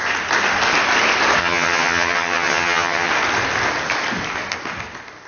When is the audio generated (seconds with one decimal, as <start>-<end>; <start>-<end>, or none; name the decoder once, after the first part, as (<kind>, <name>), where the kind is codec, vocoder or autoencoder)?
1.4-3.1 (vocoder, HiFi-GAN)